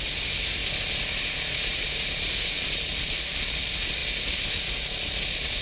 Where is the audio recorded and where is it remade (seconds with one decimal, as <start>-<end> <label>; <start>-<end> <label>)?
0.0-0.6 recorded; 0.6-3.0 remade; 3.0-4.0 recorded; 4.0-4.7 remade; 4.7-5.6 recorded